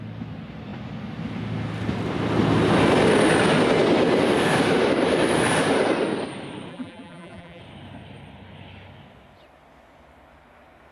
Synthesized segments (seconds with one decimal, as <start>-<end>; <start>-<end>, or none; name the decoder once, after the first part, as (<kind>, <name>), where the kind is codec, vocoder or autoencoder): 6.7-7.6 (vocoder, BigVGAN v2)